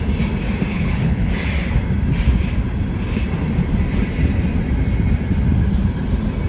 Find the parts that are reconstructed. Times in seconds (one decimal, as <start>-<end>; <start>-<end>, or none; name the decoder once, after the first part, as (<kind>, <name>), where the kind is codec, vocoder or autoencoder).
0.7-1.3 (codec, HILCodec)